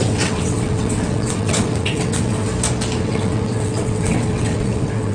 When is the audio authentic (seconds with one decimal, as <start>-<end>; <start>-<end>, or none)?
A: 2.5-3.0